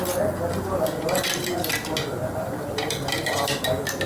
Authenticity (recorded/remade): recorded